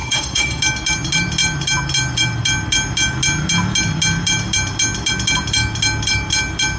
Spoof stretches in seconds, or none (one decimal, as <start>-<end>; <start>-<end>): 0.0-0.6